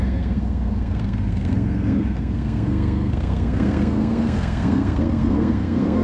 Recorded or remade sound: remade